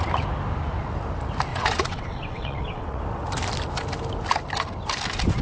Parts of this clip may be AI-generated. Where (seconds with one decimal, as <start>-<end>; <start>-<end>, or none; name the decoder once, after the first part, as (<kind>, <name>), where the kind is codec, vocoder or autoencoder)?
1.5-3.0 (vocoder, WaveNeXt)